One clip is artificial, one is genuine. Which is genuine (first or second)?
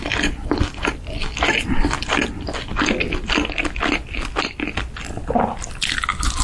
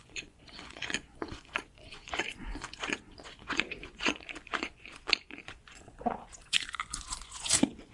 first